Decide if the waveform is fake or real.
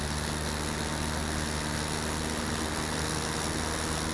real